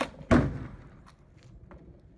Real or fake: real